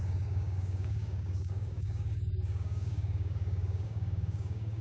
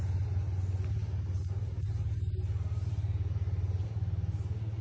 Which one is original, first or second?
second